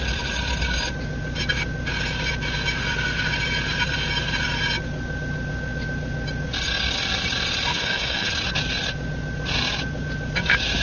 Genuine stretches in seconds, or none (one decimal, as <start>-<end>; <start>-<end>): 0.0-7.7; 8.3-10.8